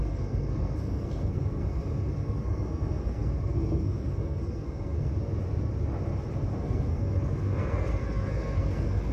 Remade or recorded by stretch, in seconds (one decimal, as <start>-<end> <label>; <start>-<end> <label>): 0.0-5.1 remade; 5.1-6.6 recorded; 6.6-9.1 remade